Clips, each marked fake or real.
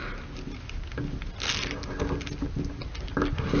real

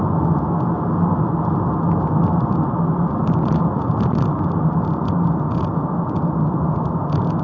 real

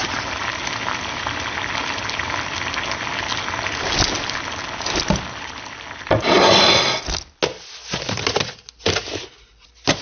real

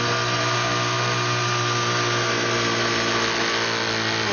real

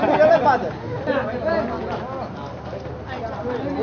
real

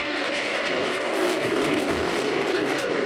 fake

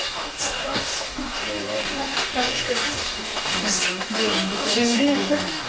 fake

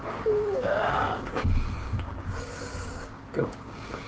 fake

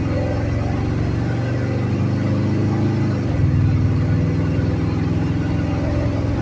real